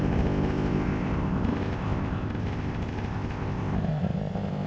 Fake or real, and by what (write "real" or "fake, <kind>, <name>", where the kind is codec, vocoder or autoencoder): fake, codec, ZipCodec